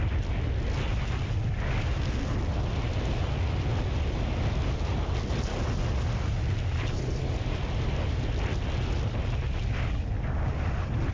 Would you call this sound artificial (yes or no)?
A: no